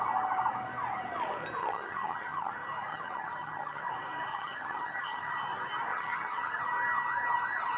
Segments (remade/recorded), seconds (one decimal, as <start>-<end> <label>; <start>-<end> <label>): 0.0-1.6 recorded; 1.6-2.5 remade; 2.5-2.9 recorded; 2.9-3.8 remade; 3.8-4.3 recorded; 4.3-5.3 remade; 5.3-5.9 recorded; 5.9-6.6 remade; 6.6-7.8 recorded